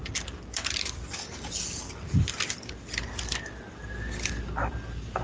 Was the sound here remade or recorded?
recorded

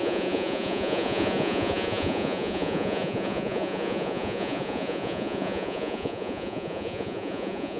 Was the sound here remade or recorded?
remade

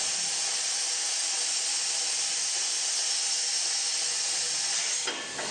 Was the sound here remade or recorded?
recorded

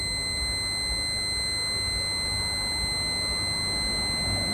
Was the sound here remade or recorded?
recorded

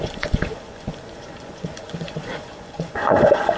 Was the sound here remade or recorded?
remade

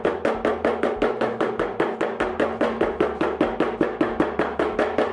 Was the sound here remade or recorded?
recorded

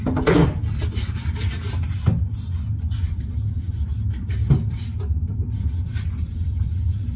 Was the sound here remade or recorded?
recorded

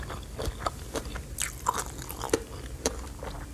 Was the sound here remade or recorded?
recorded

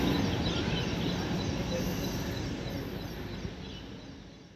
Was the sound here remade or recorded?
recorded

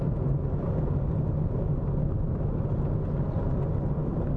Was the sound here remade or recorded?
recorded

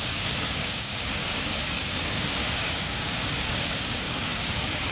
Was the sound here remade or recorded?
remade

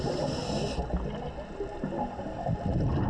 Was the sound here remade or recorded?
recorded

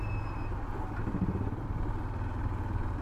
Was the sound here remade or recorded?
recorded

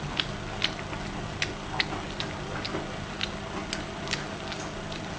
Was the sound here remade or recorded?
recorded